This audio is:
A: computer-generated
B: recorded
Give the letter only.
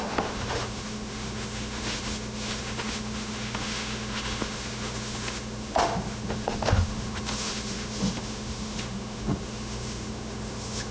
A